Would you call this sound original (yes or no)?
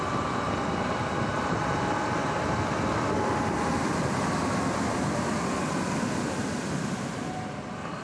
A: yes